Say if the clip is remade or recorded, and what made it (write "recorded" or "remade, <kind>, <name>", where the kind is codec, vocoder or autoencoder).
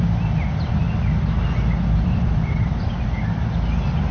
recorded